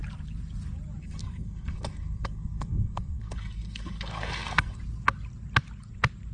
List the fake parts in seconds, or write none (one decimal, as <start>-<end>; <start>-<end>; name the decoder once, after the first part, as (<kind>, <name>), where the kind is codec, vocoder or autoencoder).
1.0-4.8 (codec, SNAC)